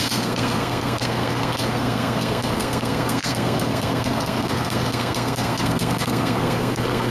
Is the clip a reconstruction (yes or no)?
yes